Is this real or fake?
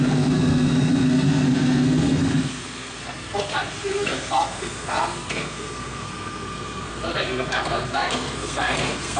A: fake